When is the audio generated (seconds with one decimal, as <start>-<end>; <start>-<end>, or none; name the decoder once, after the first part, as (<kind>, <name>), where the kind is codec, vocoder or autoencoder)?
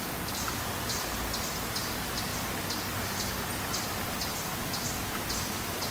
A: none